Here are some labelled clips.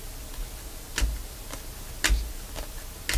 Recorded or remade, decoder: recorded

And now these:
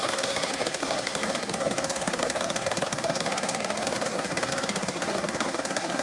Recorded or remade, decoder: remade, codec, SNAC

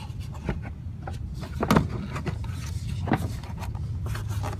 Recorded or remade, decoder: recorded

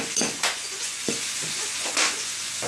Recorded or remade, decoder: remade, vocoder, Vocos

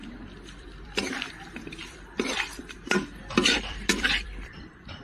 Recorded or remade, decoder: remade, vocoder, BigVGAN v2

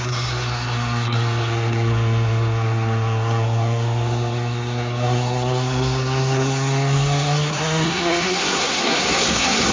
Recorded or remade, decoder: remade, codec, SNAC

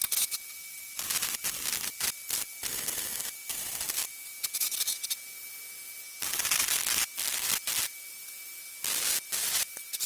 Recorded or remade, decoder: recorded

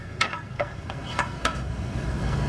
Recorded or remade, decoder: remade, codec, SNAC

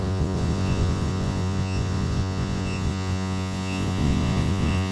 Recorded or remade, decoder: remade, vocoder, Vocos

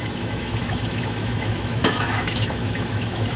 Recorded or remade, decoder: remade, autoencoder, DAC-VAE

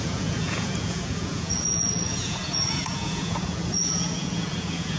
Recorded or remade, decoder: remade, vocoder, Vocos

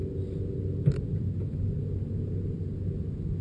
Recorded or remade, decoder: recorded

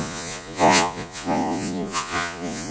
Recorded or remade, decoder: remade, vocoder, Vocos